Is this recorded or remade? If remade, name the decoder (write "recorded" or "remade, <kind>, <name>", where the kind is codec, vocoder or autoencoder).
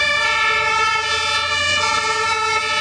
recorded